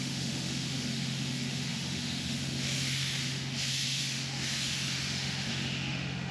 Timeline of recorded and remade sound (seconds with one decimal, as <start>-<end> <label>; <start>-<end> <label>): 0.0-6.3 remade